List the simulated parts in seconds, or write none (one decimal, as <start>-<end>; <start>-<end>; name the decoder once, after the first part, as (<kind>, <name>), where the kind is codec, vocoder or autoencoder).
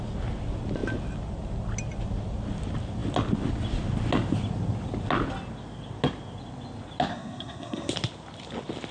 7.1-7.9 (codec, SNAC)